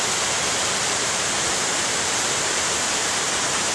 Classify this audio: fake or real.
fake